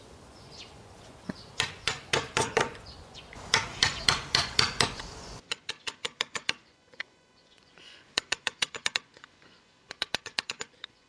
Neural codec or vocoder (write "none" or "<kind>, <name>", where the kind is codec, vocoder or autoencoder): vocoder, Vocos